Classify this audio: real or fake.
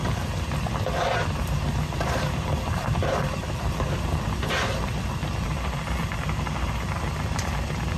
fake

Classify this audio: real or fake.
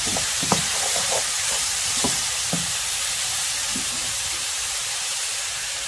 fake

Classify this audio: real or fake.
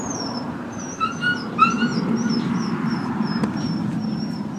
fake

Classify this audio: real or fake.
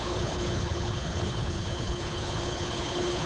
fake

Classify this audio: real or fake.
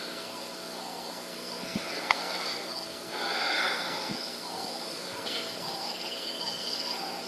fake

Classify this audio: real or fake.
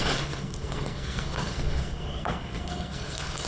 fake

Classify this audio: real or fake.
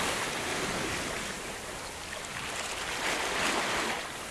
real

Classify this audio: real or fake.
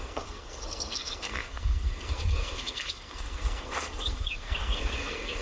fake